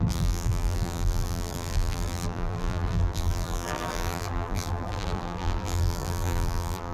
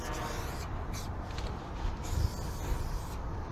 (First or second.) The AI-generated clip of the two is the first